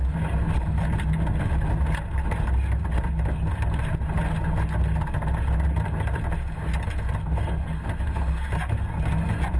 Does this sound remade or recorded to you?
recorded